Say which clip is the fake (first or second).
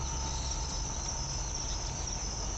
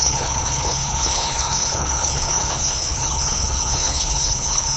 second